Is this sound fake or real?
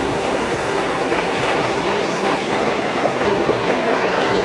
fake